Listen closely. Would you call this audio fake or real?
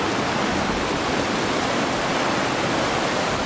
real